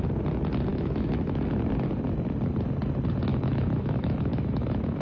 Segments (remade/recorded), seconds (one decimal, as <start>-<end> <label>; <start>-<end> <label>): 0.0-0.7 recorded; 0.7-1.4 remade; 1.4-3.3 recorded; 3.3-5.0 remade

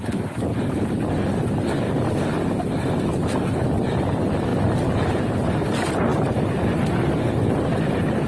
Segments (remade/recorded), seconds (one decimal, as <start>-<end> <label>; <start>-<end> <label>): 0.0-8.3 recorded

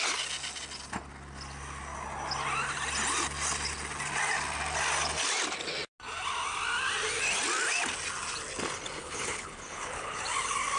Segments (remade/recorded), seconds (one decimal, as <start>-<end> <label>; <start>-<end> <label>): 0.0-9.0 recorded; 9.0-10.2 remade; 10.2-10.8 recorded

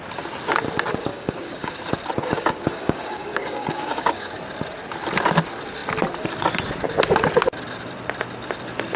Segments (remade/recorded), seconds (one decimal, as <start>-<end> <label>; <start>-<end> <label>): 0.0-1.1 recorded; 1.1-1.7 remade; 1.7-2.2 recorded; 2.2-4.3 remade; 4.3-9.0 recorded

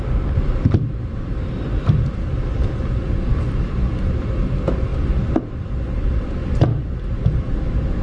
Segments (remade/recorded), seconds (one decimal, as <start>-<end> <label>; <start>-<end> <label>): 0.0-8.0 recorded

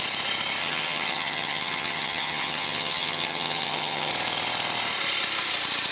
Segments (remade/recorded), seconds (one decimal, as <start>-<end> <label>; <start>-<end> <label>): 0.0-0.6 recorded; 0.6-4.1 remade; 4.1-5.9 recorded

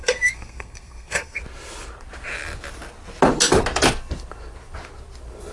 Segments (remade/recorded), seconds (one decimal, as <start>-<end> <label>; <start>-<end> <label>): 0.0-1.4 remade; 1.4-5.5 recorded

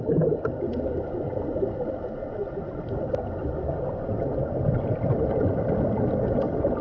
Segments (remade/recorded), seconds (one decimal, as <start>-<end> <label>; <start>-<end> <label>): 0.0-6.8 recorded